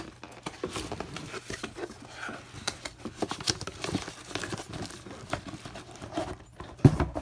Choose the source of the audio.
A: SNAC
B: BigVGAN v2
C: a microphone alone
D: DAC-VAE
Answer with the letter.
C